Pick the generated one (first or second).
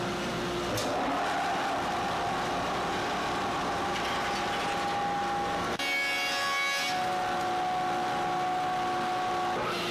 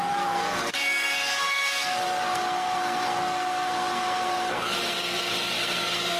second